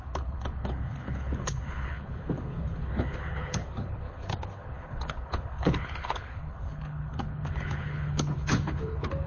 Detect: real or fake fake